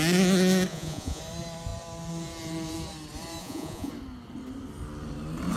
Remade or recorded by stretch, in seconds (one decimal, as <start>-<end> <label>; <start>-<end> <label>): 0.0-0.7 recorded; 0.7-1.2 remade; 1.2-3.4 recorded; 3.4-3.9 remade; 3.9-5.6 recorded